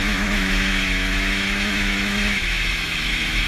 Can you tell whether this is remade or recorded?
remade